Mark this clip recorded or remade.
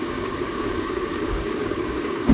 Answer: remade